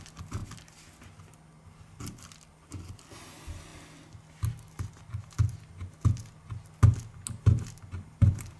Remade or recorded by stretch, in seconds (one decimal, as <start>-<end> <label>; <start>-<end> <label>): 0.0-8.6 recorded